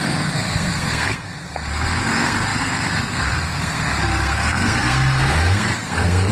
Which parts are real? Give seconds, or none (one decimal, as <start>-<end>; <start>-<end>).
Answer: none